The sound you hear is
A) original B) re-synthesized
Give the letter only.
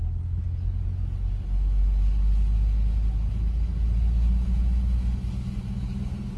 A